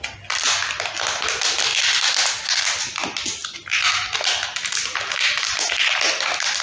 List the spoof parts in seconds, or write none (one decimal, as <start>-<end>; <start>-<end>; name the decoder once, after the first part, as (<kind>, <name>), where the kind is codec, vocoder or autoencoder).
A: none